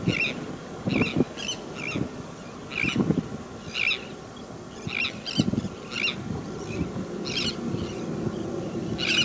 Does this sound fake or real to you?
real